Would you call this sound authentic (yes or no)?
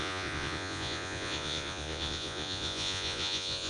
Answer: no